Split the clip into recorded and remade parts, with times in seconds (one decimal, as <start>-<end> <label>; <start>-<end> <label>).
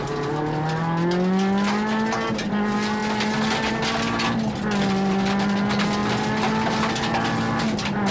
0.0-8.1 recorded